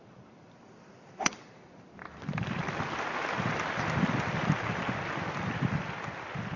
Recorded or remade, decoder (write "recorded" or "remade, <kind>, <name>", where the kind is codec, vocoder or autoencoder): remade, vocoder, BigVGAN v2